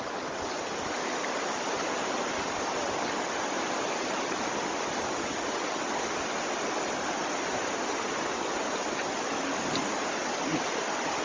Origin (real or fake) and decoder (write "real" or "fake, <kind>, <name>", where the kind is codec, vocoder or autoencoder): real